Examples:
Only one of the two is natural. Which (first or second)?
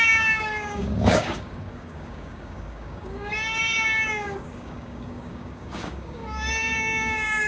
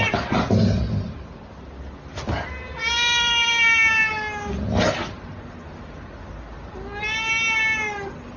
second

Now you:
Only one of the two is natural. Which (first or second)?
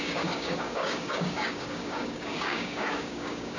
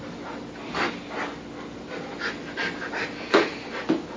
second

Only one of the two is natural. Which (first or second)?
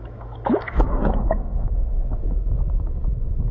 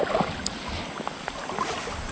second